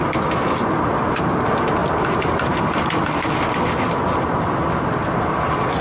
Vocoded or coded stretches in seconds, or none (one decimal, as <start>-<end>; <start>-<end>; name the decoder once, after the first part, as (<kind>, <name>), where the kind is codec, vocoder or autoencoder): none